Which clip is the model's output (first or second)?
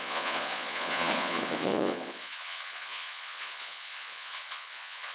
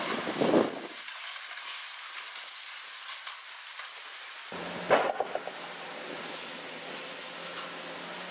first